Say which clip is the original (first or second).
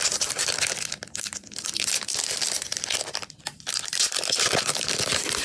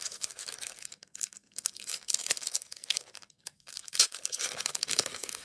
first